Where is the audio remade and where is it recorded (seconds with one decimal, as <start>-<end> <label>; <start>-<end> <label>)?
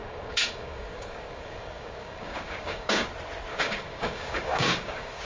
0.0-3.1 remade; 3.1-3.5 recorded; 3.5-5.2 remade